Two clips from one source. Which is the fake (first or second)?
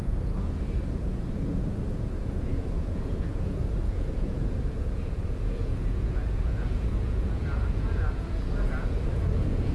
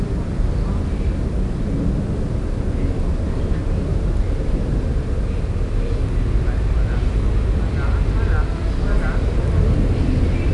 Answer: first